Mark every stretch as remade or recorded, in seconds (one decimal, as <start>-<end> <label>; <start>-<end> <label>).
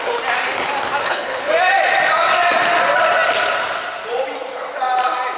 0.0-1.0 recorded; 1.0-1.5 remade; 1.5-5.4 recorded